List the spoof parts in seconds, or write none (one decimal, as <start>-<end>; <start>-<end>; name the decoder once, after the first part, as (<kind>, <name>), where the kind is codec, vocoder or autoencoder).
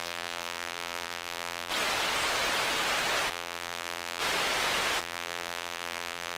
0.0-1.7 (vocoder, BigVGAN v2); 3.3-4.2; 5.0-6.4